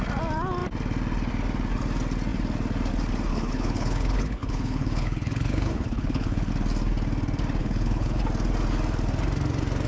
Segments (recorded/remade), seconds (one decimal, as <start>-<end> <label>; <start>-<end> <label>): 0.0-3.3 recorded; 3.3-6.5 remade; 6.5-7.6 recorded; 7.6-8.2 remade; 8.2-9.9 recorded

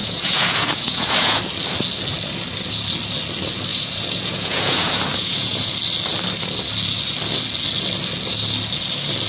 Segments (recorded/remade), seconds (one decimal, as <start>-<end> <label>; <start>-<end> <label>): 0.0-1.4 remade; 1.4-3.7 recorded; 3.7-5.7 remade; 5.7-9.3 recorded

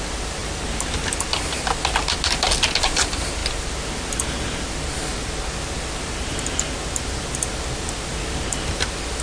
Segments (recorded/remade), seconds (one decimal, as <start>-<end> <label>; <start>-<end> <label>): 0.0-9.2 recorded

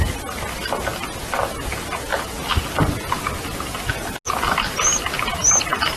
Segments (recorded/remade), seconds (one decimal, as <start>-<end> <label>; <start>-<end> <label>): 0.0-6.0 recorded

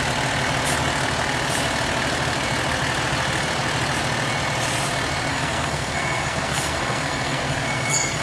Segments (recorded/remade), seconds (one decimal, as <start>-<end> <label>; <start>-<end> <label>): 0.0-5.3 recorded; 5.3-8.2 remade

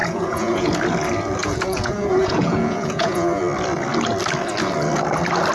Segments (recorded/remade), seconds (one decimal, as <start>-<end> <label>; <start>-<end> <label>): 0.0-0.7 remade; 0.7-1.4 recorded; 1.4-3.4 remade; 3.4-5.5 recorded